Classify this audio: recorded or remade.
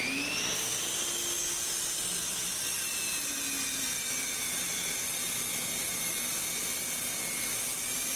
recorded